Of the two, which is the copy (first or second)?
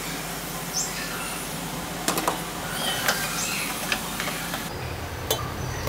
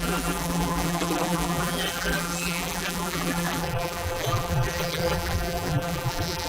second